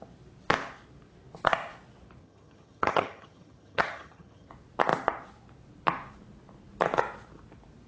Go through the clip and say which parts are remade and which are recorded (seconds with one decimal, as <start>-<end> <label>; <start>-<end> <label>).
0.0-2.2 recorded; 2.2-4.5 remade; 4.5-7.9 recorded